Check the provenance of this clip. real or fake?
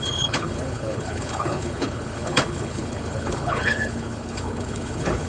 fake